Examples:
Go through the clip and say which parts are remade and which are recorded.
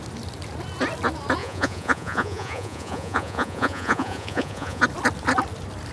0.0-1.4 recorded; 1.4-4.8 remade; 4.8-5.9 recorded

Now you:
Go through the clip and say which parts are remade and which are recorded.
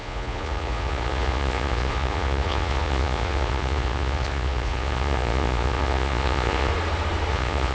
0.0-6.7 remade; 6.7-7.3 recorded; 7.3-7.7 remade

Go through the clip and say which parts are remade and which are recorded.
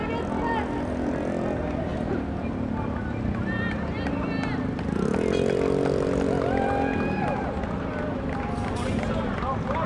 0.0-9.9 recorded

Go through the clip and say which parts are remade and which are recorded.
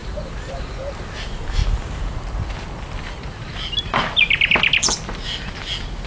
0.0-6.1 recorded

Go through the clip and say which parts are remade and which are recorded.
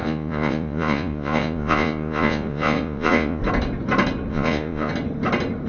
0.0-3.4 remade; 3.4-4.3 recorded; 4.3-4.9 remade; 4.9-5.7 recorded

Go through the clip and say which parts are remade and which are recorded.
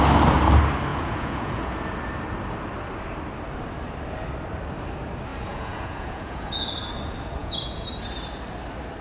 0.0-0.9 recorded; 0.9-1.7 remade; 1.7-5.3 recorded; 5.3-6.7 remade; 6.7-7.4 recorded; 7.4-7.9 remade; 7.9-9.0 recorded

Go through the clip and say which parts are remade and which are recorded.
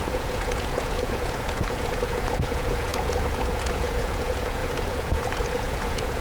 0.0-6.2 remade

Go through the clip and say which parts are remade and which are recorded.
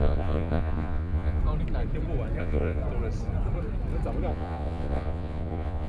0.0-1.4 remade; 1.4-2.4 recorded; 2.4-2.8 remade; 2.8-4.3 recorded; 4.3-5.9 remade